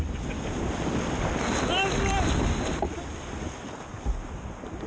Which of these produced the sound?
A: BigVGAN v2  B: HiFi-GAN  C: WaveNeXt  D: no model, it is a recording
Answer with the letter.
D